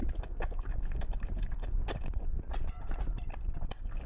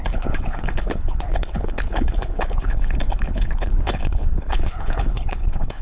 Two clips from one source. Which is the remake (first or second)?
second